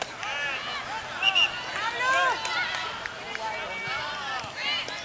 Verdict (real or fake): real